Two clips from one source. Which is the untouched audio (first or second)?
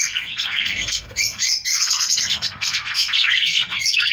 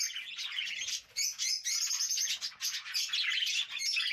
second